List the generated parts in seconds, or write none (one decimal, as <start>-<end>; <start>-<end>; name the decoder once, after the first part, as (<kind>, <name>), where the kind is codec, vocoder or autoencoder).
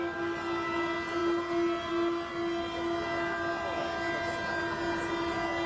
none